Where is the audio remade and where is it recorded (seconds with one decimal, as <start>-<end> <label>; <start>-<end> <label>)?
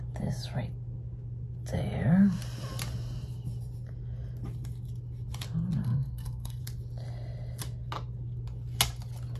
0.0-5.8 recorded; 5.8-6.6 remade; 6.6-9.4 recorded